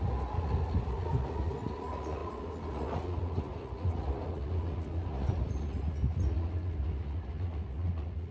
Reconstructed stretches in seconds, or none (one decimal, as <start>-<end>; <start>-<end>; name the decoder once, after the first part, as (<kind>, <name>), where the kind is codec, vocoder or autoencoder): 0.0-8.3 (vocoder, Vocos)